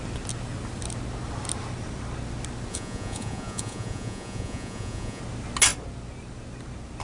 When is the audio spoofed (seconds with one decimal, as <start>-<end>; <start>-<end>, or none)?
2.7-5.2